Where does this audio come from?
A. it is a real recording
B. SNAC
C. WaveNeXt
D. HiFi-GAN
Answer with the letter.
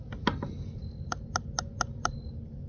A